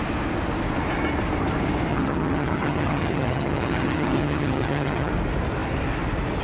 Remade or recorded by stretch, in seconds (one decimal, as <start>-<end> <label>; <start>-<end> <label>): 0.0-1.9 recorded; 1.9-5.1 remade; 5.1-6.4 recorded